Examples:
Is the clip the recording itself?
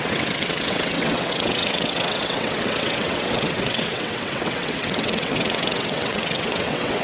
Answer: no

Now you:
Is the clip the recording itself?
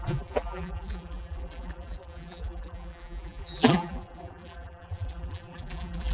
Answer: no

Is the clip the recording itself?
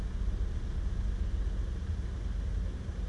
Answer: yes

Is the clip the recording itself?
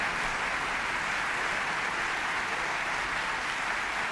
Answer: yes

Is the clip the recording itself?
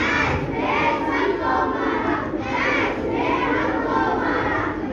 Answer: yes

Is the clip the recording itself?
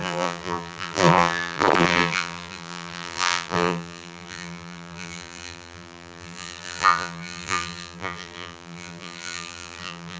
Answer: no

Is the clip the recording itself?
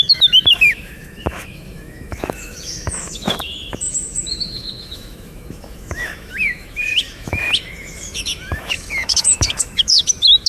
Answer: no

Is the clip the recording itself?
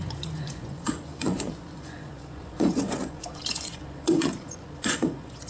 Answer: no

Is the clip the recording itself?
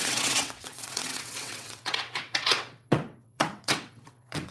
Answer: no